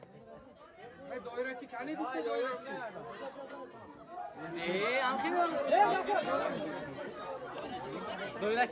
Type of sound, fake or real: real